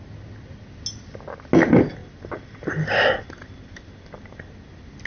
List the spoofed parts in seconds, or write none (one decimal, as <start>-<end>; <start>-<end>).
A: none